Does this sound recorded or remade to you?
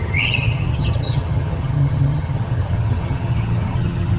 remade